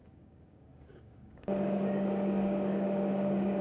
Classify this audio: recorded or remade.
remade